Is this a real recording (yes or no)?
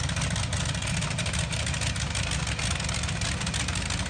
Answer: yes